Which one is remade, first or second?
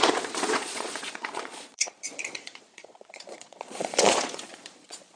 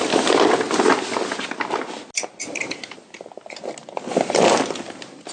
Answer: first